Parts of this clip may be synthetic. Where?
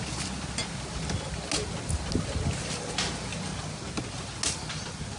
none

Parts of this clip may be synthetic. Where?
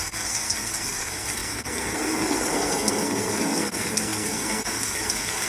0.0-5.5 (codec, SNAC)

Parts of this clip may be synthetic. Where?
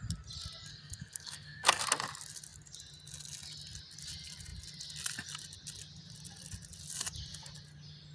0.7-1.8 (codec, SNAC)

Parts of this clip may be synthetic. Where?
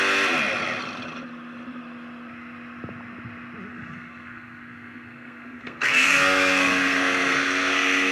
3.7-8.1 (codec, SNAC)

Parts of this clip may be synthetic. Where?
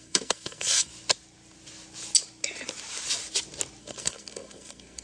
0.0-0.9 (codec, SNAC); 3.8-5.0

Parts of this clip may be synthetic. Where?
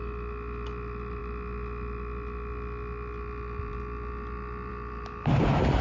none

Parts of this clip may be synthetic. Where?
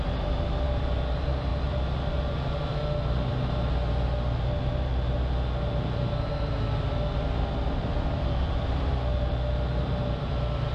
none